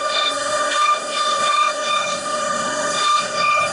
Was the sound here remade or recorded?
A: remade